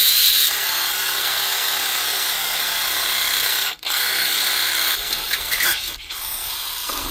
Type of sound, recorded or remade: remade